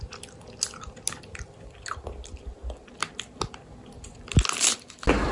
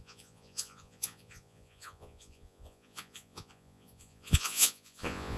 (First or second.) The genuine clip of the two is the first